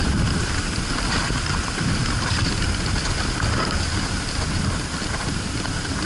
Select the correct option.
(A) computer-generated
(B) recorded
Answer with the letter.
A